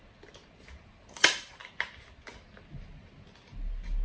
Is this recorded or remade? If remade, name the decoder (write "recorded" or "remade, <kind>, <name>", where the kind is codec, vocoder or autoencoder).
recorded